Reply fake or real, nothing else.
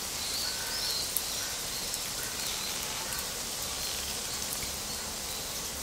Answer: fake